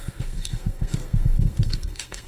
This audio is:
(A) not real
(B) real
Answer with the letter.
A